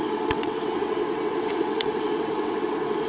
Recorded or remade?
remade